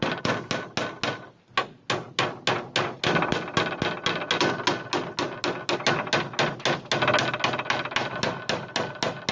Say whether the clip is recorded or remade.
recorded